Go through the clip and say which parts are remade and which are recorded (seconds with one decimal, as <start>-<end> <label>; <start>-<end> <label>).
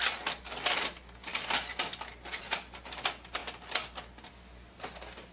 0.0-5.3 recorded